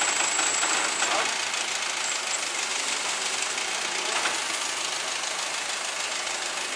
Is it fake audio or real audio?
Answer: real